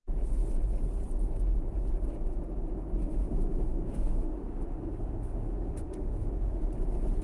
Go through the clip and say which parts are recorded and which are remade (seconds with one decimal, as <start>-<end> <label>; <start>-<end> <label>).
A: 0.0-3.0 recorded; 3.0-6.6 remade; 6.6-7.2 recorded